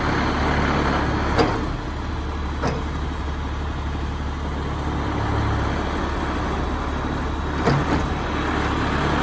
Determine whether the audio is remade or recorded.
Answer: recorded